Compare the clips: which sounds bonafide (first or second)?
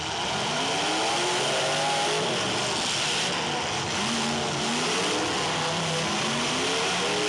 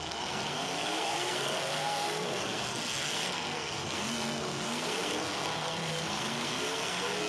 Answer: first